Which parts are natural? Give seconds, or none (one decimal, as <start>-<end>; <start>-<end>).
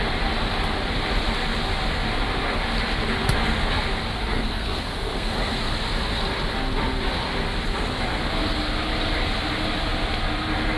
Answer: 0.0-4.3; 5.6-10.8